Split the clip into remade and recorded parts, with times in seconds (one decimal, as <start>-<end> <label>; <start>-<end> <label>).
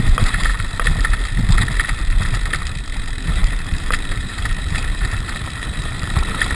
0.0-0.5 remade; 0.5-3.0 recorded; 3.0-6.5 remade